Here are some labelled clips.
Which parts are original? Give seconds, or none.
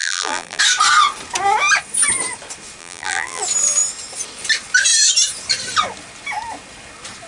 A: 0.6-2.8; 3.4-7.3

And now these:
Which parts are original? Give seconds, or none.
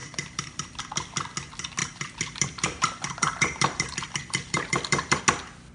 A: 0.8-1.8; 5.2-5.7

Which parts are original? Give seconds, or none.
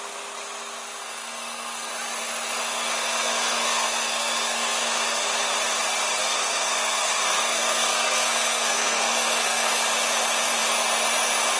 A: 0.0-1.0; 1.9-2.7; 5.3-6.2; 9.7-11.6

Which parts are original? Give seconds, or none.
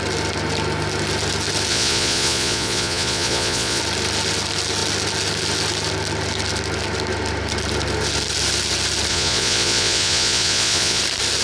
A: 0.0-1.7; 3.8-9.1; 11.0-11.4